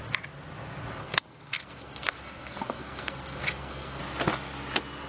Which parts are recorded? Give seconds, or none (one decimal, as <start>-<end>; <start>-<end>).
0.0-1.0; 4.0-5.1

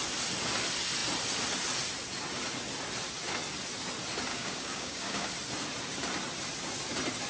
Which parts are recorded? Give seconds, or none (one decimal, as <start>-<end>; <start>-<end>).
0.0-4.3; 5.3-7.3

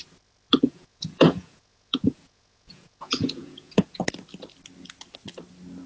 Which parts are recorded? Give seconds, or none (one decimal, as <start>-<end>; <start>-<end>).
0.0-0.5; 4.0-5.9

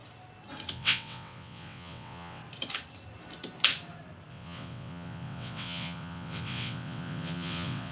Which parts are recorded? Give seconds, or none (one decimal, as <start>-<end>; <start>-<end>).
0.0-0.7; 2.4-4.3

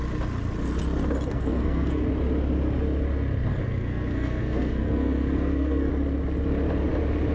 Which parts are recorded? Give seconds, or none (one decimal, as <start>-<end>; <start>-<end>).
0.0-1.3; 2.1-3.5; 5.9-7.3

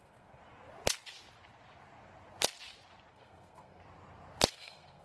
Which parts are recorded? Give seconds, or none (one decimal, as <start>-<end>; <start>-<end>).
0.4-3.1; 3.8-4.5

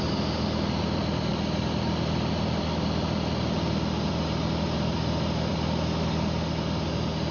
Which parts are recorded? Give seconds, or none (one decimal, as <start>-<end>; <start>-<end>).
0.0-7.3

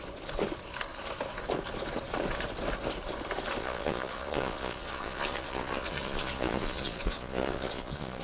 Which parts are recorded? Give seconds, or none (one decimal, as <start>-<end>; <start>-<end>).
0.0-3.6